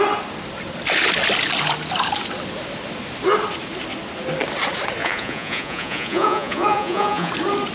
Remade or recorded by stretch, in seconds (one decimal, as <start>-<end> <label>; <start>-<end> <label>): 0.0-5.0 recorded; 5.0-7.3 remade; 7.3-7.7 recorded

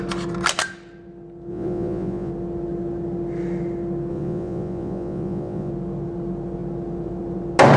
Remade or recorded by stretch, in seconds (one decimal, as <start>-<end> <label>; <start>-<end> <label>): 0.0-1.5 recorded; 1.5-2.3 remade; 2.3-4.1 recorded; 4.1-5.7 remade; 5.7-7.8 recorded